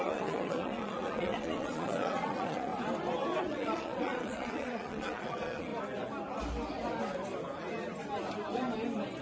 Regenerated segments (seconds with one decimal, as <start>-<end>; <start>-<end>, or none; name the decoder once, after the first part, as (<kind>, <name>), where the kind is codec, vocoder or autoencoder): 0.0-2.7 (vocoder, Vocos); 3.4-5.7